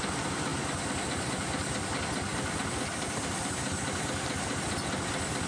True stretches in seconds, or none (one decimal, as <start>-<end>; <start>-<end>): 0.0-0.5; 1.9-5.5